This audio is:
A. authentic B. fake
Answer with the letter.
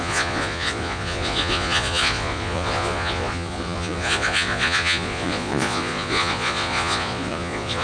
B